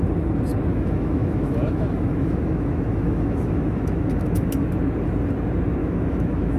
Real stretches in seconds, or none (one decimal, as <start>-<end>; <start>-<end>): 0.0-0.7; 4.7-5.8